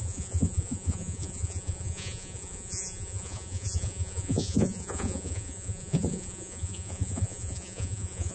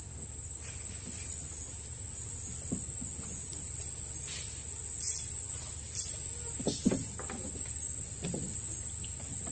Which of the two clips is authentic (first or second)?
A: second